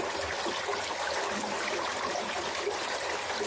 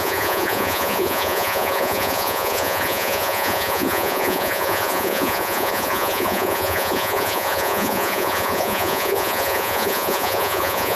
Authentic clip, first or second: first